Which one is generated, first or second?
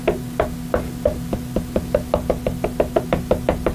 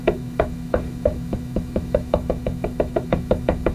second